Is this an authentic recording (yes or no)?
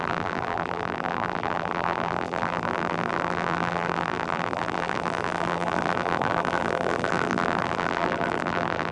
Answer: no